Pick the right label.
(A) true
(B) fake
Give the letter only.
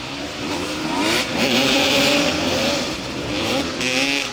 B